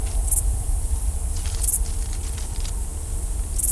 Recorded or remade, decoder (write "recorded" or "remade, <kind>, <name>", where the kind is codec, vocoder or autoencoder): remade, vocoder, BigVGAN v2